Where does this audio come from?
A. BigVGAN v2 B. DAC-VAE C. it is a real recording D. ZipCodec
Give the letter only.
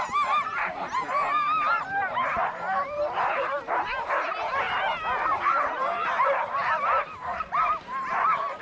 A